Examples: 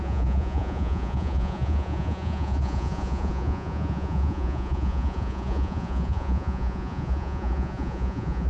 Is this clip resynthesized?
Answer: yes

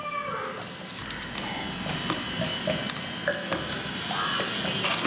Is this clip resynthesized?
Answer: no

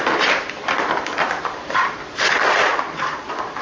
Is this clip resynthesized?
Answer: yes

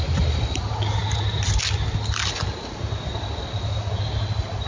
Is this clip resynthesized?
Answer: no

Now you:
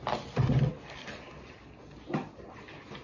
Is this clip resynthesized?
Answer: no